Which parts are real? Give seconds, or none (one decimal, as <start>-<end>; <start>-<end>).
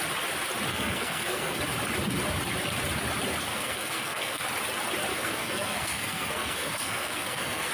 0.0-0.7; 1.6-3.5; 4.4-5.1